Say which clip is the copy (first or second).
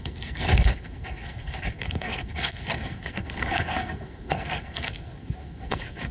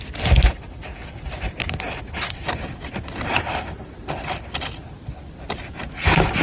first